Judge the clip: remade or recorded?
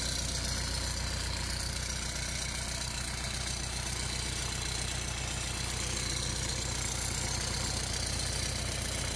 recorded